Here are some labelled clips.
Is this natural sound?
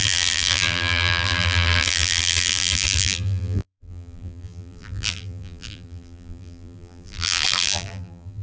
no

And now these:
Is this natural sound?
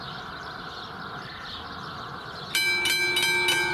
yes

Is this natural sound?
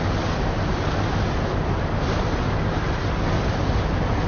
yes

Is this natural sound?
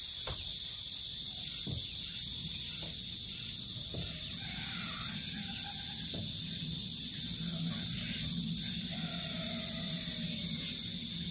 yes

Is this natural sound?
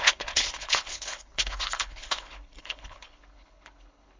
no